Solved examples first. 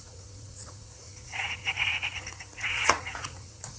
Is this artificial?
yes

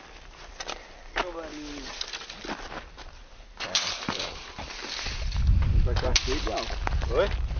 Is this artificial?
no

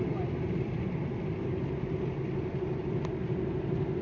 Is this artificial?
no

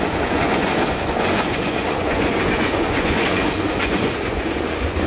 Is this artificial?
yes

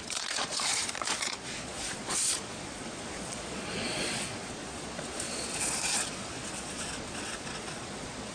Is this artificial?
yes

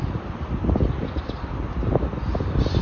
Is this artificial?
no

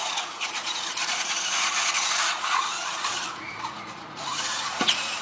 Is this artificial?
yes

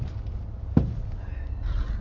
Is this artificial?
no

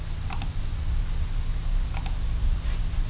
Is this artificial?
no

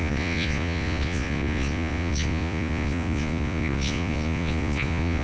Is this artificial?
yes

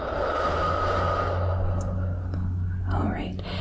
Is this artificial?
no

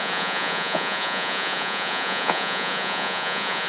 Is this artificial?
yes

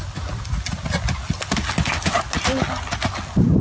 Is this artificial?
no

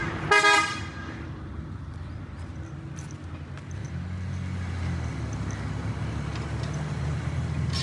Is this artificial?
no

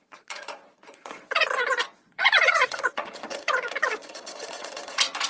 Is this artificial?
yes